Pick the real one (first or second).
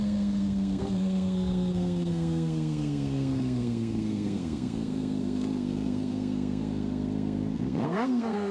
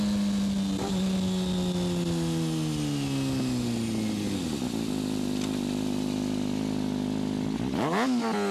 second